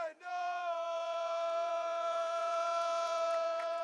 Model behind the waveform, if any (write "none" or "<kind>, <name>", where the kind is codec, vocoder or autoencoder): vocoder, Vocos